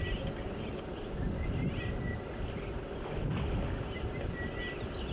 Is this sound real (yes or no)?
yes